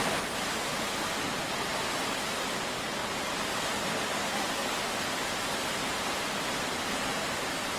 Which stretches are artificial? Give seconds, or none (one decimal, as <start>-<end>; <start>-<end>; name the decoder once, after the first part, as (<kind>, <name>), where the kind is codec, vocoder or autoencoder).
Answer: none